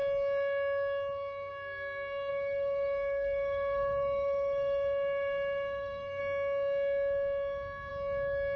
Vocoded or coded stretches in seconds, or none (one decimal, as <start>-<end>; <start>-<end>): 2.3-6.2